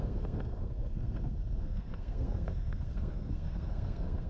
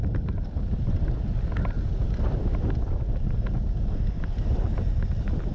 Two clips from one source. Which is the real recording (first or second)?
second